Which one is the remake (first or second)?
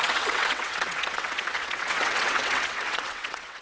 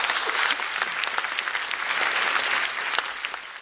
first